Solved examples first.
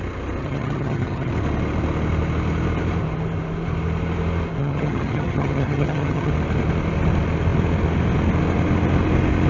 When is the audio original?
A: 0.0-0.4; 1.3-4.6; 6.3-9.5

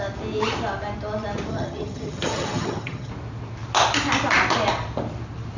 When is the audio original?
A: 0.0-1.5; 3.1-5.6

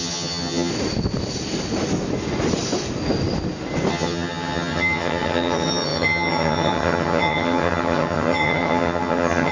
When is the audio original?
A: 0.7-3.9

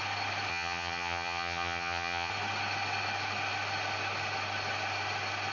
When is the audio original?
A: 0.0-0.5; 2.3-5.5

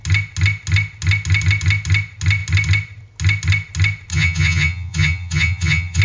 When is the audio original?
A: 0.0-4.1

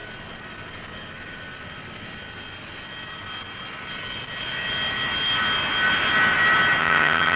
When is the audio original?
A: 0.0-6.8